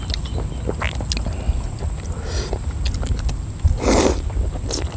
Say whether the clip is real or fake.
real